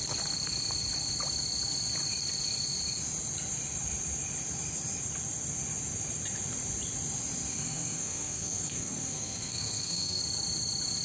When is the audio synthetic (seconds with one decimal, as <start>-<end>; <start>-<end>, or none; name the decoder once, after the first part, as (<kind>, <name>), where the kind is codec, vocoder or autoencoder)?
7.5-10.2 (codec, SNAC)